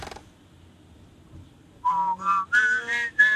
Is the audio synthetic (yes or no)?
no